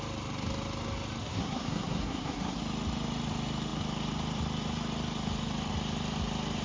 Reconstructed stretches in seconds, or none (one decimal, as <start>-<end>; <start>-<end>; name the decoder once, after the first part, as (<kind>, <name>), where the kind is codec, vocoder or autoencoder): 1.2-2.6 (codec, SNAC)